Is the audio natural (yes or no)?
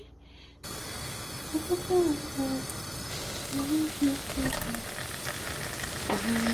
yes